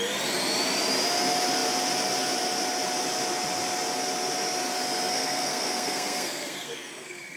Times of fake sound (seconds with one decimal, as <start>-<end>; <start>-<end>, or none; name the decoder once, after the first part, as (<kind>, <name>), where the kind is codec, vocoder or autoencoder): 5.1-7.4 (codec, SNAC)